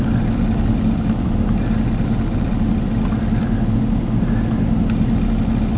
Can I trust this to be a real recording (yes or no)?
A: yes